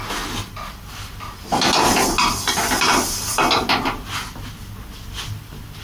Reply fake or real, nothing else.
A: real